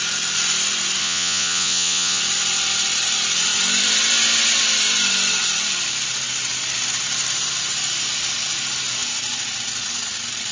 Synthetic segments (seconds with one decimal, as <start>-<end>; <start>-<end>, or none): 1.0-2.2